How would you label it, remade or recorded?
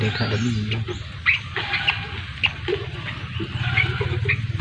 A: recorded